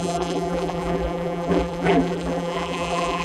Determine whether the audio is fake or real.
fake